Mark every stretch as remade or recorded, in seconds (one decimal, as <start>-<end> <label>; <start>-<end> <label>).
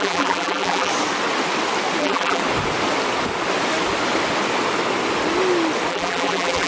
0.0-0.9 remade; 0.9-2.0 recorded; 2.0-2.4 remade; 2.4-5.9 recorded; 5.9-6.7 remade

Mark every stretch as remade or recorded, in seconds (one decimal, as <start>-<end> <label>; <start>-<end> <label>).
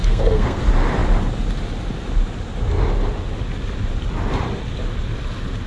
0.0-0.6 remade; 0.6-5.7 recorded